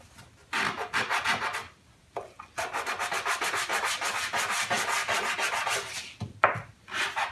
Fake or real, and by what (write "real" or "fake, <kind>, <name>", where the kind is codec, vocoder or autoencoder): real